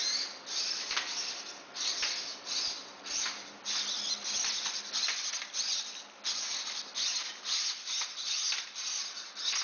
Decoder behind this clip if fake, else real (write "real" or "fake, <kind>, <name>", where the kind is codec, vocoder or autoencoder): real